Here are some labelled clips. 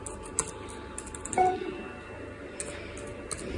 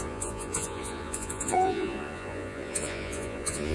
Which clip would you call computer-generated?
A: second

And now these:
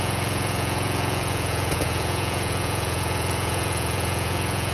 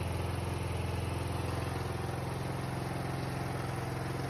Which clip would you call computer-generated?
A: first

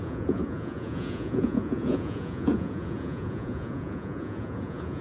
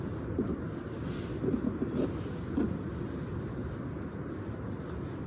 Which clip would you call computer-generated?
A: first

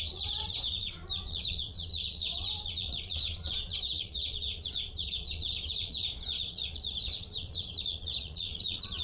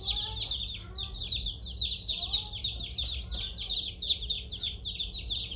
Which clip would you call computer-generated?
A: first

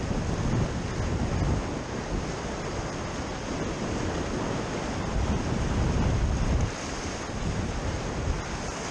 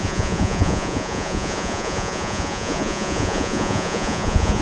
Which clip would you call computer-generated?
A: second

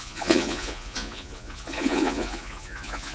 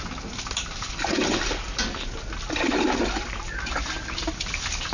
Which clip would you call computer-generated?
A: first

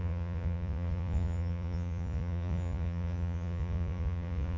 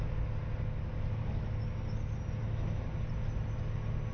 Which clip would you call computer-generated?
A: first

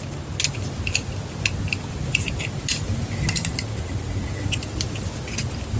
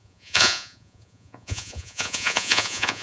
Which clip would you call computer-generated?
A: second